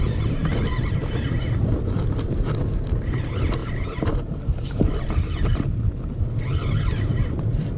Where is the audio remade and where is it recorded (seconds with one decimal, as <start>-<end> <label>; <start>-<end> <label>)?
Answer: 0.0-7.8 recorded